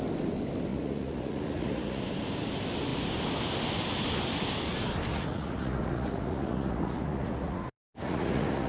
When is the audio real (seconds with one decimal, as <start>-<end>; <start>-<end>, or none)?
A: 0.0-0.7; 2.0-5.1